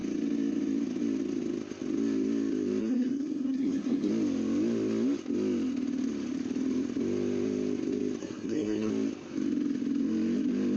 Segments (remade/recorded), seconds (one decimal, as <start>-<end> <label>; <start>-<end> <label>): 0.0-2.8 recorded; 2.8-4.1 remade; 4.1-8.2 recorded; 8.2-8.9 remade; 8.9-10.8 recorded